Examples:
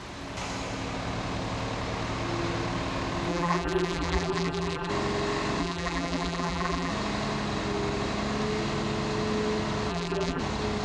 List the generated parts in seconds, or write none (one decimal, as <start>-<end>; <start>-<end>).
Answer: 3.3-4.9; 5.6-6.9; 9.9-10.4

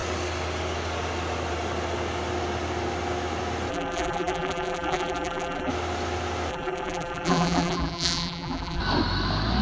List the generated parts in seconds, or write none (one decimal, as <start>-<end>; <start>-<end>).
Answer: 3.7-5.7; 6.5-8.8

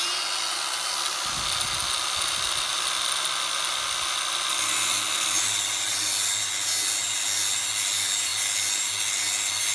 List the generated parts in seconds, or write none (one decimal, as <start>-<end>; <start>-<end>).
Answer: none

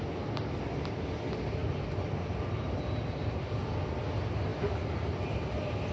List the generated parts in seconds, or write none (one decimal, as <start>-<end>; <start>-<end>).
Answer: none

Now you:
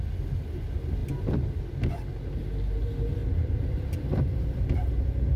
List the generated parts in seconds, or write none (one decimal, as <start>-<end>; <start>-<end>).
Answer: 3.2-4.7

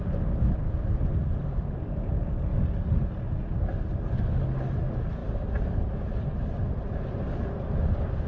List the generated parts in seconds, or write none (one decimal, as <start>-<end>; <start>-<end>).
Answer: none